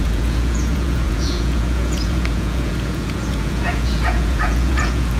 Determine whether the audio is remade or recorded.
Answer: remade